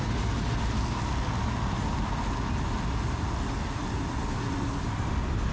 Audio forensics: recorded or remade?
recorded